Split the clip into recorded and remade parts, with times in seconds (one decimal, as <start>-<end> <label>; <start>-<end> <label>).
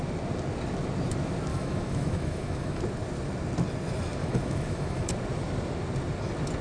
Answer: 0.0-1.5 recorded; 1.5-2.8 remade; 2.8-4.2 recorded; 4.2-5.1 remade; 5.1-6.6 recorded